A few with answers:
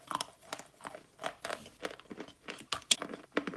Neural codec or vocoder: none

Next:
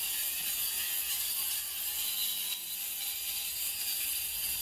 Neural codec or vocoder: none